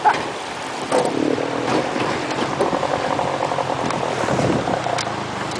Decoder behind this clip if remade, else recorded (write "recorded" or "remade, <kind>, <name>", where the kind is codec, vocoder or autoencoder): remade, vocoder, BigVGAN v2